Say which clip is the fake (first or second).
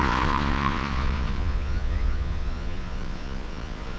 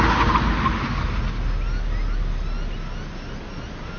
first